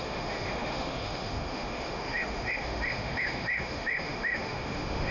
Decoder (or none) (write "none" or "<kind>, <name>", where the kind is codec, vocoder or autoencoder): autoencoder, DAC-VAE